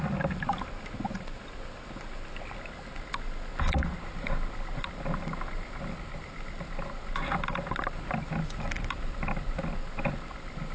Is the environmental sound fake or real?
real